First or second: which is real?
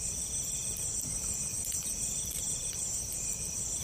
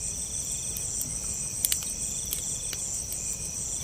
second